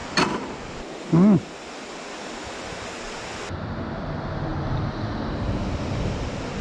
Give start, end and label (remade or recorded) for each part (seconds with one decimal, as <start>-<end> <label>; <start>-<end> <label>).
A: 0.0-6.6 recorded